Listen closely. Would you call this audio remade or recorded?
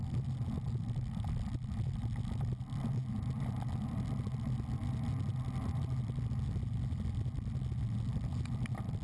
recorded